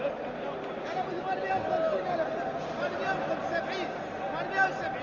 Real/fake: real